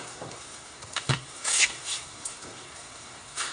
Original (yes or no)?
no